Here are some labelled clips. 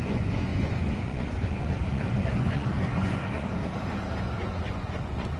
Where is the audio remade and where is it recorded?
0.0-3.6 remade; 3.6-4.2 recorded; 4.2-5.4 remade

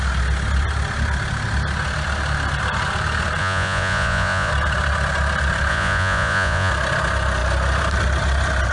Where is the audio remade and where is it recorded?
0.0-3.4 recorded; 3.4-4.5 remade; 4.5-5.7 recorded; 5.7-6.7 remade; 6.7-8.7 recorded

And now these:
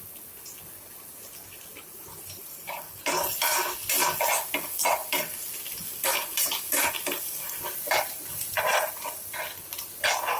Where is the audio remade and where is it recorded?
0.0-1.7 recorded; 1.7-2.8 remade; 2.8-6.1 recorded; 6.1-9.4 remade; 9.4-10.4 recorded

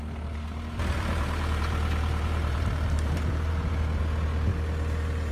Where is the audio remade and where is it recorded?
0.0-0.5 recorded; 0.5-3.7 remade; 3.7-5.3 recorded